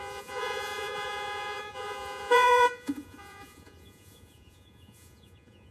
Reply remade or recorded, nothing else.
remade